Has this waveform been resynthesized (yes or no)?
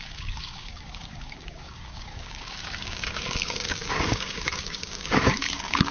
yes